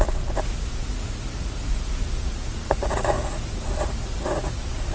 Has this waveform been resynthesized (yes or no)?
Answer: yes